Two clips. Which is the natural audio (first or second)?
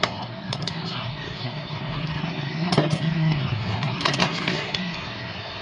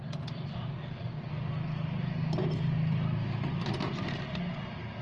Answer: second